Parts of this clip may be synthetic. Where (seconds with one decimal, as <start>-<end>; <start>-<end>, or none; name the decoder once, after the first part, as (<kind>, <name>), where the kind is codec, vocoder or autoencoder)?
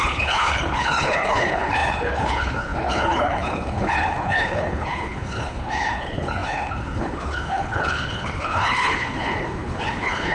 0.0-10.3 (codec, HILCodec)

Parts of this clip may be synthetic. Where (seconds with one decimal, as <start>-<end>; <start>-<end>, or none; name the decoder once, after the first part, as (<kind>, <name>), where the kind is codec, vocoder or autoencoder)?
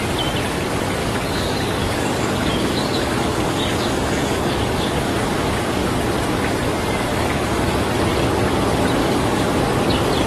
1.0-5.9 (codec, DAC); 7.1-7.8; 9.0-9.6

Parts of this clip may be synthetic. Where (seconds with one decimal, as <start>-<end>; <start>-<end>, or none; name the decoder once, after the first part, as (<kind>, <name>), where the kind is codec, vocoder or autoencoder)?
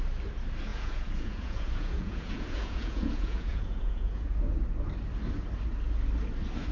0.7-4.5 (vocoder, Vocos)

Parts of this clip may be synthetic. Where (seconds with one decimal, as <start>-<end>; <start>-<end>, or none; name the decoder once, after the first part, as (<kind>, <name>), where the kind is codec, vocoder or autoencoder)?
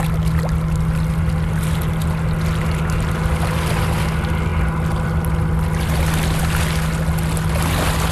none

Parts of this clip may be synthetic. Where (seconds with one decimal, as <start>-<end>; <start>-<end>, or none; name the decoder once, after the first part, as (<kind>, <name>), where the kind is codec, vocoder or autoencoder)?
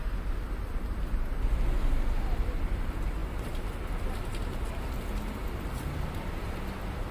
none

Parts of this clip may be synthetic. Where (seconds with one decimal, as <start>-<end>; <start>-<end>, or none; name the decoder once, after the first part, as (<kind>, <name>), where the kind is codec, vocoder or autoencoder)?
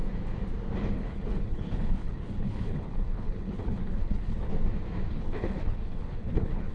0.9-4.5 (codec, HILCodec); 5.1-6.7